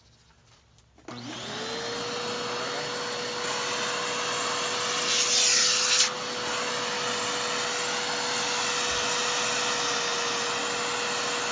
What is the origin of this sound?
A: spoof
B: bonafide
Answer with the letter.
B